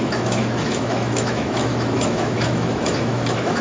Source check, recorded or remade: remade